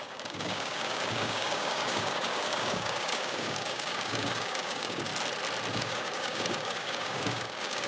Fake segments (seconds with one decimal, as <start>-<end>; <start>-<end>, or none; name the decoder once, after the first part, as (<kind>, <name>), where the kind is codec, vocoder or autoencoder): 0.0-5.1 (codec, DAC); 5.7-7.9